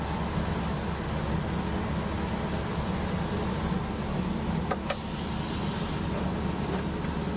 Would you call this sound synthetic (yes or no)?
no